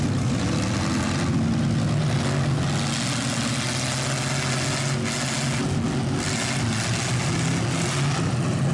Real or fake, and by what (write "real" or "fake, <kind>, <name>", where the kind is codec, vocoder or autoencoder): real